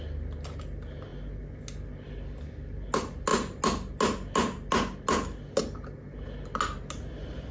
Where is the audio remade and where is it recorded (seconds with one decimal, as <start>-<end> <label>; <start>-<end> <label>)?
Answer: 0.0-7.5 recorded